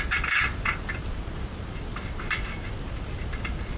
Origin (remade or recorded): recorded